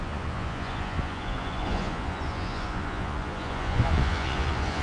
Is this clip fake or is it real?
fake